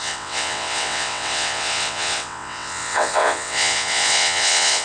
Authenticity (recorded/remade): remade